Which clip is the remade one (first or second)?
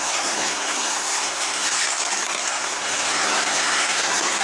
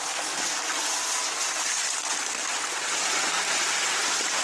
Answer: first